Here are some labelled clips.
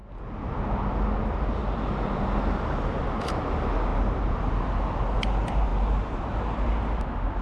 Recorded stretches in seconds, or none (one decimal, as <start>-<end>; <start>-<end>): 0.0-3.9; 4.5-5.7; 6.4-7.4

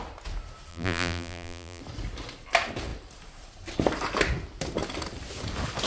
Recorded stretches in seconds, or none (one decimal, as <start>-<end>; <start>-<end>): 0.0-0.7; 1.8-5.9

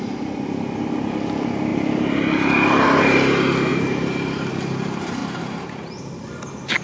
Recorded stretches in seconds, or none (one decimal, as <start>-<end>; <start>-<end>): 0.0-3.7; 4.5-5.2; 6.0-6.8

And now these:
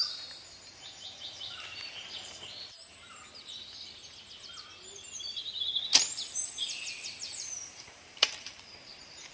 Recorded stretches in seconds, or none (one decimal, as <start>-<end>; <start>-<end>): 0.0-1.2; 4.0-7.4

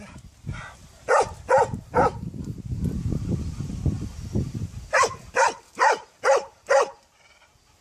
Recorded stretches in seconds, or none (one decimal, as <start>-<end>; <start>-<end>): 0.0-0.8; 1.4-7.8

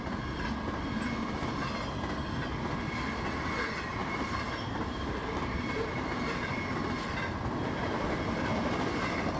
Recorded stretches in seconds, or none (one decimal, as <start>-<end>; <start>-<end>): 0.0-4.0; 6.2-9.4